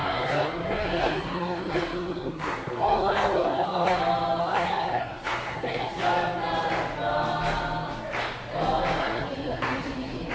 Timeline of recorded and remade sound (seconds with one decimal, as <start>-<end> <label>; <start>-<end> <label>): 0.0-4.0 remade; 4.0-4.4 recorded; 4.4-6.0 remade; 6.0-9.0 recorded; 9.0-10.3 remade